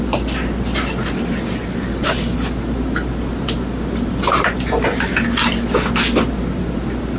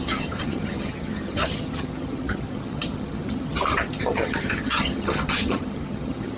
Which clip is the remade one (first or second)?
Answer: second